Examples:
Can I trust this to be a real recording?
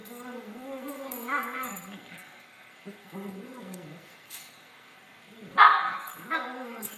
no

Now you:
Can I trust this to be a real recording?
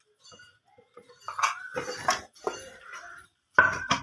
yes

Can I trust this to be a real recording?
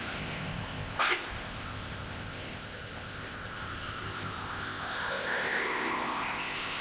no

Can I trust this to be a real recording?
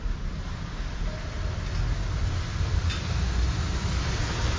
yes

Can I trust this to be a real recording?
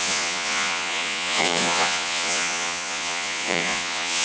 no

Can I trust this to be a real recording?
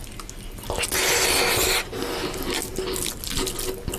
yes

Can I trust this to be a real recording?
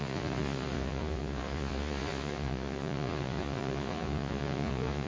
no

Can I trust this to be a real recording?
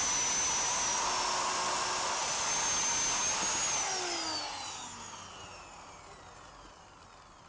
yes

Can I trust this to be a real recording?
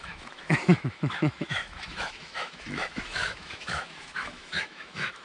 no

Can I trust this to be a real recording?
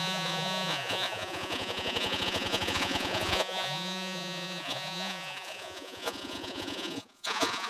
no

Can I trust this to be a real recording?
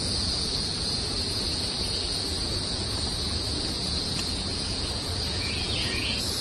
no